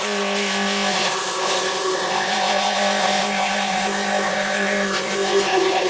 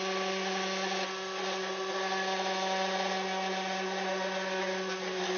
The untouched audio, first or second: second